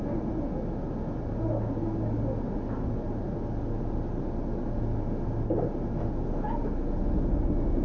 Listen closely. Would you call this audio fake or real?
real